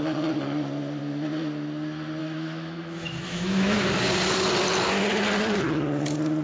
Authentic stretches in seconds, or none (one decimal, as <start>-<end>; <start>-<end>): 0.0-2.2; 3.9-6.4